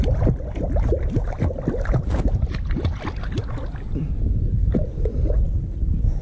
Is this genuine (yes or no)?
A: yes